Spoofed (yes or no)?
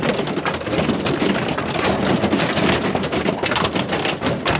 no